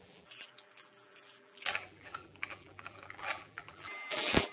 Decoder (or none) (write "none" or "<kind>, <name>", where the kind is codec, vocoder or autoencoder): vocoder, BigVGAN v2